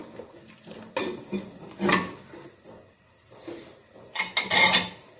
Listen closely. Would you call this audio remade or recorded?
recorded